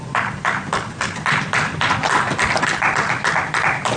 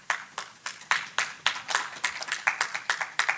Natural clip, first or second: second